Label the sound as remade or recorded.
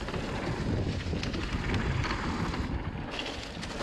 recorded